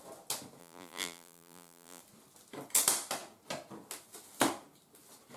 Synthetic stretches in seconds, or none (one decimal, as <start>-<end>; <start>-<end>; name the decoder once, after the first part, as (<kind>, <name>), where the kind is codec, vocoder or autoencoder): 0.6-2.0 (vocoder, BigVGAN v2)